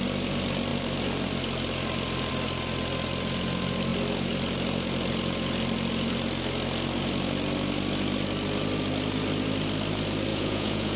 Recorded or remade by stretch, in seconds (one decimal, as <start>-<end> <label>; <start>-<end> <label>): 0.0-10.3 recorded; 10.3-11.0 remade